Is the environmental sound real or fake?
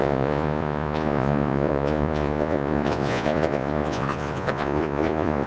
fake